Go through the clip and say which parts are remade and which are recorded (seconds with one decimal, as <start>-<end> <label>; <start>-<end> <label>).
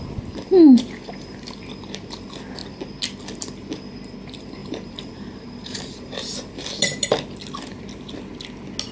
0.0-4.6 recorded; 4.6-6.3 remade; 6.3-8.9 recorded